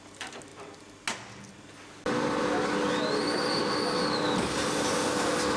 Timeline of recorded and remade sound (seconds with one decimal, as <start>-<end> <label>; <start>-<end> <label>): 0.0-5.6 recorded